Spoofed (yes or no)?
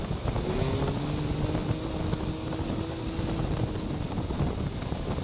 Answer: no